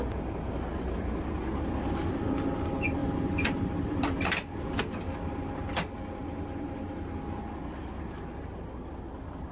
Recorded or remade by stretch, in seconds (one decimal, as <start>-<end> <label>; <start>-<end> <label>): 0.0-3.0 recorded; 3.0-4.8 remade; 4.8-9.5 recorded